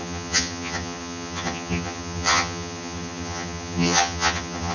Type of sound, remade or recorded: remade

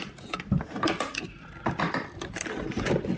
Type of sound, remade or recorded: recorded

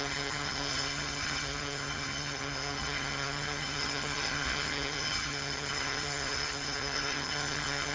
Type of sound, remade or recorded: remade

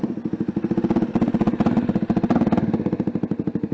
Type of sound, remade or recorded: recorded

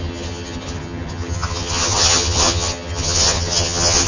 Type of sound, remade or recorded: remade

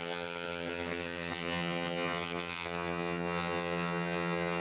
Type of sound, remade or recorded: remade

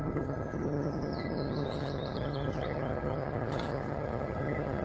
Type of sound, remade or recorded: remade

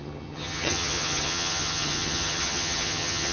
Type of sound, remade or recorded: remade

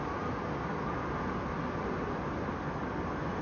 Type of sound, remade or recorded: recorded